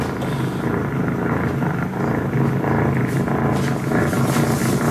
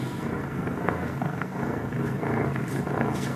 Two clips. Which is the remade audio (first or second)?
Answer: second